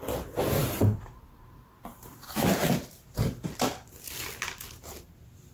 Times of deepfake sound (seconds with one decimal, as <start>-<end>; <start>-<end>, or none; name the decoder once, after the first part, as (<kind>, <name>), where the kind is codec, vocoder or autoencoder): 0.6-3.9 (vocoder, BigVGAN v2)